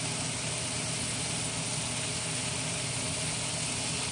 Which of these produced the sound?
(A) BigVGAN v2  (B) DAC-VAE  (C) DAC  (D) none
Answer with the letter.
D